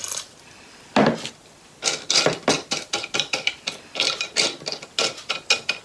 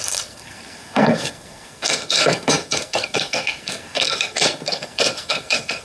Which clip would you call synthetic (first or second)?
second